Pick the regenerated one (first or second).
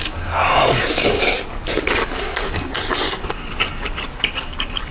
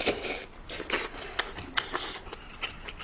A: first